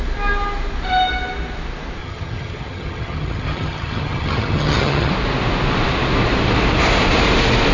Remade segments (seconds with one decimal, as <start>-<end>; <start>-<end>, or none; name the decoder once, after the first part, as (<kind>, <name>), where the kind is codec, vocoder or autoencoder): 2.0-5.1 (vocoder, HiFi-GAN)